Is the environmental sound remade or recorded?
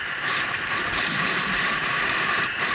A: remade